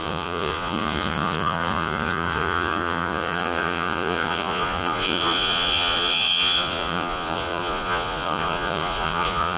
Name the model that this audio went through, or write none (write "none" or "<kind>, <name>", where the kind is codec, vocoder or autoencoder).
vocoder, Vocos